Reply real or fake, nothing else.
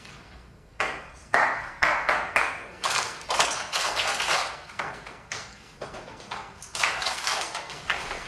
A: fake